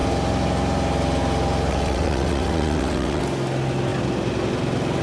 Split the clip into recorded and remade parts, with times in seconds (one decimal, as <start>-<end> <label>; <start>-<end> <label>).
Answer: 0.0-1.7 recorded; 1.7-3.2 remade; 3.2-5.0 recorded